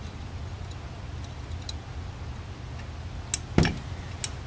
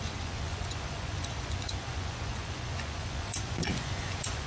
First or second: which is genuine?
first